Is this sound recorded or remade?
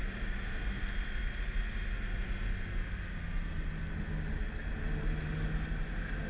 recorded